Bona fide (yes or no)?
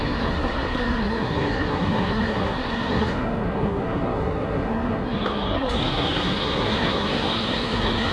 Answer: no